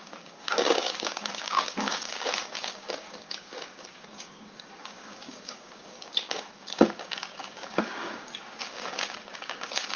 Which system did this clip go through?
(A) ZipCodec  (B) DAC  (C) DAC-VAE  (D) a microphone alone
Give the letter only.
B